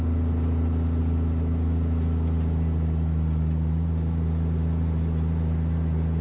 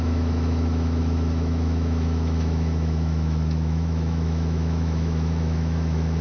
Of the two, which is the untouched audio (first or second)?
first